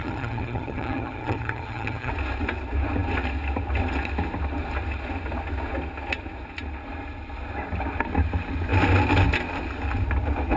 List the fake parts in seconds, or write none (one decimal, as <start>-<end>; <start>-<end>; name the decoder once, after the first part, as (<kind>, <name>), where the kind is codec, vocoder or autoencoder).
0.0-2.1 (vocoder, HiFi-GAN)